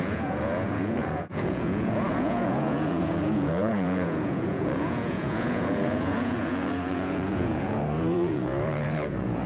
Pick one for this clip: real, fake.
fake